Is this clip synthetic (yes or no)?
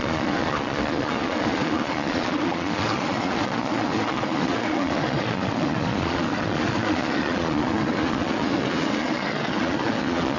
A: yes